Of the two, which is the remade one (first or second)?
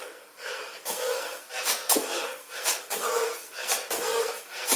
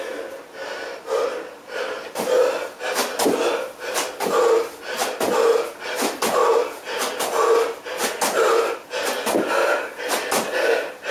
first